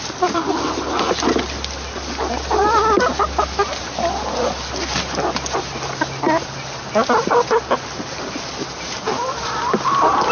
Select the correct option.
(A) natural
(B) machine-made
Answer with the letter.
A